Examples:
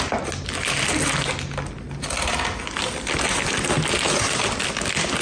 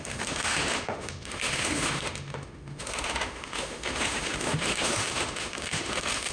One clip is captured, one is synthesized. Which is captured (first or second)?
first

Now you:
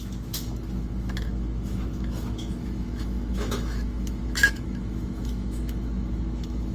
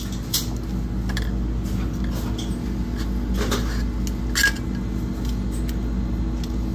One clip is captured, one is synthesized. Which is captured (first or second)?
second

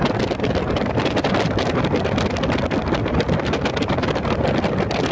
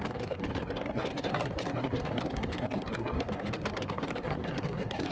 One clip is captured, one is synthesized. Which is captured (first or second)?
first